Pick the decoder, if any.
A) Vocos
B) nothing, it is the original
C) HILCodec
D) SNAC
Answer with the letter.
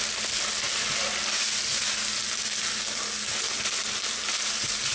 B